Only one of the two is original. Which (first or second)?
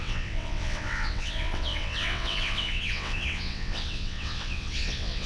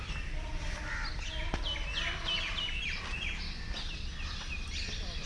second